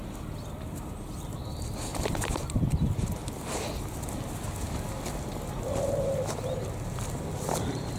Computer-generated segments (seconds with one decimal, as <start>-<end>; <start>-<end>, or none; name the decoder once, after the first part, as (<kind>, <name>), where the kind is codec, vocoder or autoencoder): 0.0-1.9 (vocoder, BigVGAN v2); 6.7-8.0